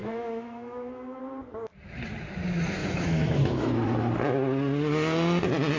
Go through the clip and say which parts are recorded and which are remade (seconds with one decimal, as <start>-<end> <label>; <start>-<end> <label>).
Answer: 0.0-1.2 remade; 1.2-2.8 recorded; 2.8-3.7 remade; 3.7-5.8 recorded